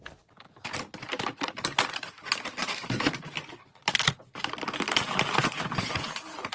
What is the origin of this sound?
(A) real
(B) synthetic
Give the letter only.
A